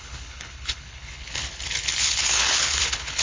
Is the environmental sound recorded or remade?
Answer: remade